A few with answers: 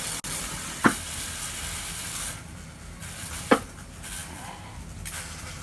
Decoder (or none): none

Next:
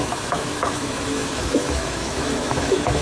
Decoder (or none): autoencoder, DAC-VAE